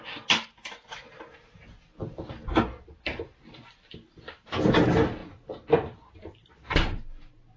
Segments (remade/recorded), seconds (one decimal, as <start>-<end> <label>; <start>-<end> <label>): 0.0-5.2 recorded; 5.2-7.0 remade; 7.0-7.6 recorded